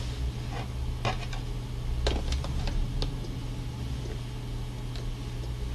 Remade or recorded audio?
recorded